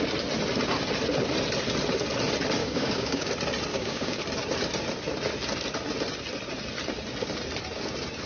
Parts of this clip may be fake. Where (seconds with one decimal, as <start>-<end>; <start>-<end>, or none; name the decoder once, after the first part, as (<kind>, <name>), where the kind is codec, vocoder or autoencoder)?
2.6-3.3 (codec, DAC); 3.7-4.2